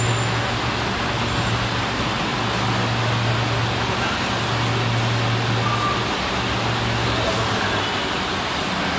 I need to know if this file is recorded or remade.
recorded